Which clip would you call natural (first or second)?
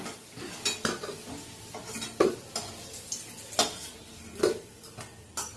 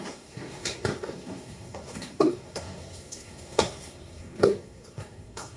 first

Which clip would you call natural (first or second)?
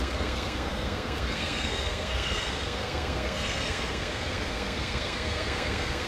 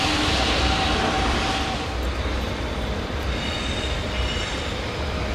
second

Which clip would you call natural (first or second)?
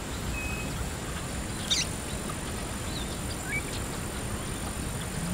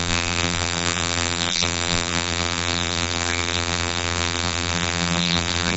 first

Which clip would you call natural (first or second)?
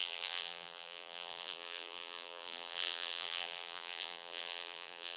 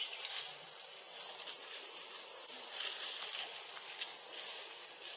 second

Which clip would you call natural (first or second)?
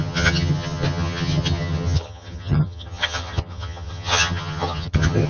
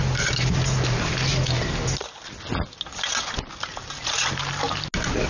second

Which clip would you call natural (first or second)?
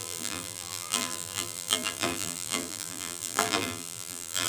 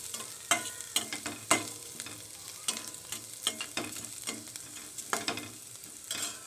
second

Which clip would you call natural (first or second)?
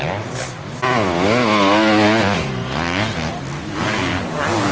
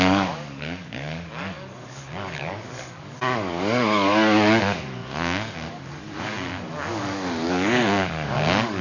first